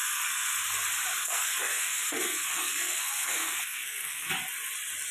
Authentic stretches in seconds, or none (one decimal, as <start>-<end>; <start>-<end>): 0.6-1.2; 4.3-5.1